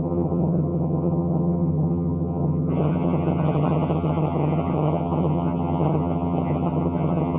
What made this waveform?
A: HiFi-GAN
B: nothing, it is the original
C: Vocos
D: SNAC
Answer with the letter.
A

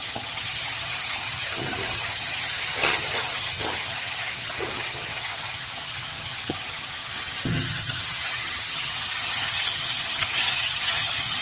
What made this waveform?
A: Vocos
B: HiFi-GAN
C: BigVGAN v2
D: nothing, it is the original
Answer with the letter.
B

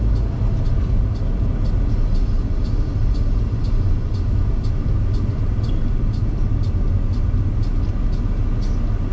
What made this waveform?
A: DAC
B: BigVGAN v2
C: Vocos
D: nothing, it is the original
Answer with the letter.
D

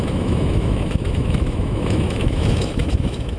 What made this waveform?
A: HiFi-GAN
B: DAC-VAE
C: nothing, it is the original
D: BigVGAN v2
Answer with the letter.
B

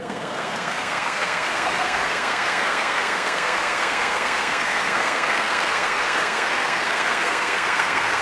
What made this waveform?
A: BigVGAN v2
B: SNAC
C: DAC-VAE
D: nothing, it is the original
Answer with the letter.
B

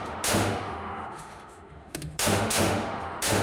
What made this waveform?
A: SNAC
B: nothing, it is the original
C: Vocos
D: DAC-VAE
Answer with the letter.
D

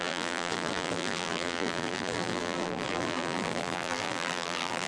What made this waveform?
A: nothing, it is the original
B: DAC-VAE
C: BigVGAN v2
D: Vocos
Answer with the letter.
C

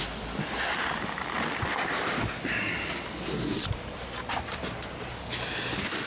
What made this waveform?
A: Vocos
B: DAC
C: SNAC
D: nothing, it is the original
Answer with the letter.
D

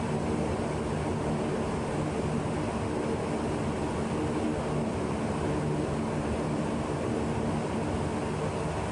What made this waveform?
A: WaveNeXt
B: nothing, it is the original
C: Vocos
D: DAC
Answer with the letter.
B